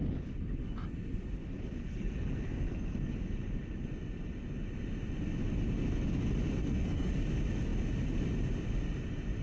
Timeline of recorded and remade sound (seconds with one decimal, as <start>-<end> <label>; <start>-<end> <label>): 0.0-1.8 recorded; 1.8-3.1 remade; 3.1-6.6 recorded; 6.6-7.1 remade; 7.1-9.4 recorded